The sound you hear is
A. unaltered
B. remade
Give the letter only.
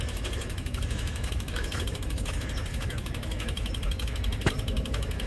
B